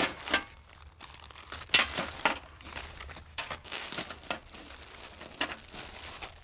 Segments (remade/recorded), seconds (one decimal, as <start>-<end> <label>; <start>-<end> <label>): 0.0-3.3 recorded; 3.3-3.9 remade; 3.9-6.4 recorded